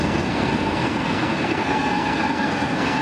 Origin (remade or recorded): remade